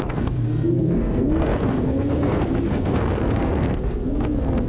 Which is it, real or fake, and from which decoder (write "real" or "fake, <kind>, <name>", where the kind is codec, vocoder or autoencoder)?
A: fake, codec, SNAC